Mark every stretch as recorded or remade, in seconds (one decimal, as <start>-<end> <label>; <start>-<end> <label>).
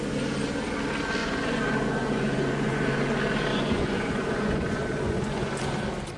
0.0-1.2 recorded; 1.2-3.0 remade; 3.0-3.5 recorded; 3.5-5.6 remade; 5.6-6.2 recorded